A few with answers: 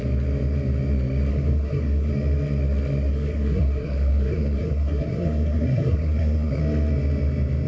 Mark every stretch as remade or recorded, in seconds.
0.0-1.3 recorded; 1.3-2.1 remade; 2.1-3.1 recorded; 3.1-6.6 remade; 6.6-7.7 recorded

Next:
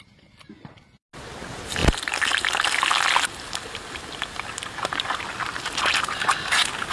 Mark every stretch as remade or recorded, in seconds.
0.0-6.9 recorded

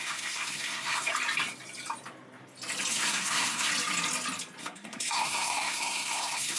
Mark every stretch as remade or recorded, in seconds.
0.0-1.1 remade; 1.1-2.9 recorded; 2.9-3.7 remade; 3.7-4.6 recorded; 4.6-6.6 remade

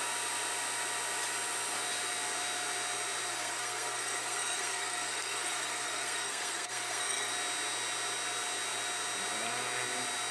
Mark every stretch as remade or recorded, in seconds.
0.0-3.3 recorded; 3.3-7.3 remade; 7.3-10.3 recorded